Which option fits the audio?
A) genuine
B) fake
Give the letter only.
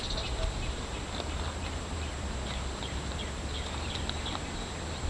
A